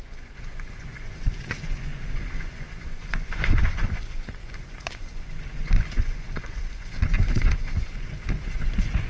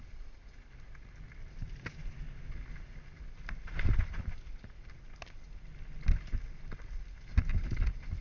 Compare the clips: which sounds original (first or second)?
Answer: second